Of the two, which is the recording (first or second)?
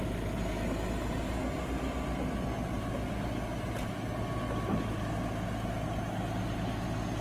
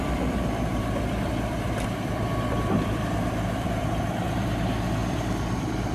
first